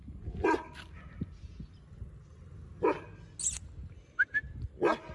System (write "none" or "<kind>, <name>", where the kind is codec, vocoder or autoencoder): none